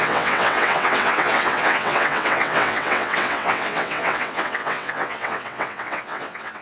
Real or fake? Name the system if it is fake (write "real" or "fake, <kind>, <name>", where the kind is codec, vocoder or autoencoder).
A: fake, vocoder, WaveNeXt